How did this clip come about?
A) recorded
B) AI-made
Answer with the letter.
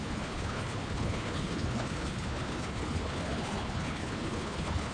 B